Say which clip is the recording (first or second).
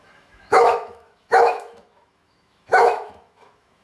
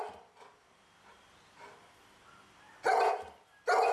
second